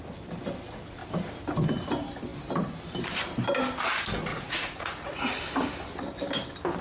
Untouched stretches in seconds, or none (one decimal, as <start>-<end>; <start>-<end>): 0.0-4.3; 5.4-6.8